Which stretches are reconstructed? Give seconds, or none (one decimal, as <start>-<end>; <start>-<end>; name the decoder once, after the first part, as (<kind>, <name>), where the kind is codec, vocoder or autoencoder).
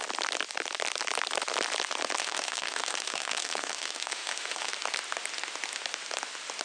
2.2-4.7 (autoencoder, DAC-VAE)